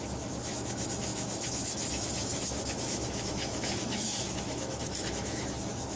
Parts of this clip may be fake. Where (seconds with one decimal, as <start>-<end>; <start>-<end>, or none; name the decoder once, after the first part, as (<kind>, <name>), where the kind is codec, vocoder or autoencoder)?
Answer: 0.0-6.0 (autoencoder, DAC-VAE)